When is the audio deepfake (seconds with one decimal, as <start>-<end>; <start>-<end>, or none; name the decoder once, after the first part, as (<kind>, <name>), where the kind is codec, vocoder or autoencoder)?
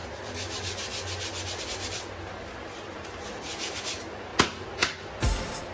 2.9-3.5 (vocoder, BigVGAN v2)